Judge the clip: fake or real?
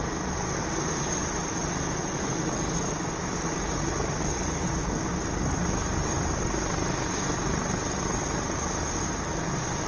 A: real